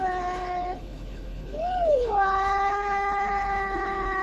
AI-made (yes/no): yes